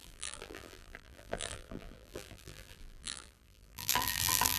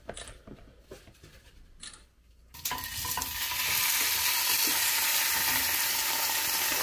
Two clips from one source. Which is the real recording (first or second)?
second